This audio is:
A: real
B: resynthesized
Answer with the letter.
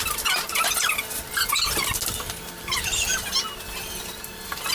A